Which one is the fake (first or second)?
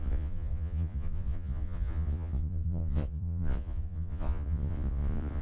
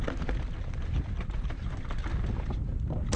first